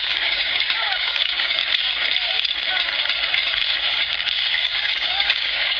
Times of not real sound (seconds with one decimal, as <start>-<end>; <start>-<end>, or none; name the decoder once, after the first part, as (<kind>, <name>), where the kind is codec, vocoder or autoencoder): 0.0-1.6 (codec, DAC); 4.5-5.8